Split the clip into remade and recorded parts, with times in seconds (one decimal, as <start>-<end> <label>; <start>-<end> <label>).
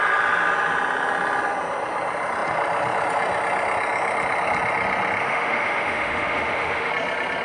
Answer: 0.0-5.2 recorded; 5.2-6.9 remade; 6.9-7.4 recorded